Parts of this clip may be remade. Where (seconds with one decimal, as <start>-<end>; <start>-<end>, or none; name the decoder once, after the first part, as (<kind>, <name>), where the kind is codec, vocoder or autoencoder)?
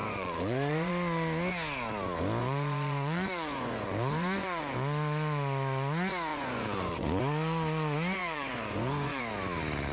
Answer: 0.0-0.9 (vocoder, Vocos); 2.4-4.6; 6.3-7.2; 8.2-9.2